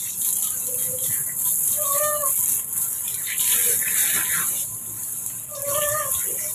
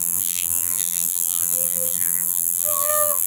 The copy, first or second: second